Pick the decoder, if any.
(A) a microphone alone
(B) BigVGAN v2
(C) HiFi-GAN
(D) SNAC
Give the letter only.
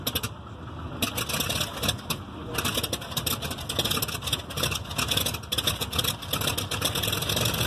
A